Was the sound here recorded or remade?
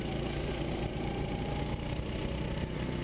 recorded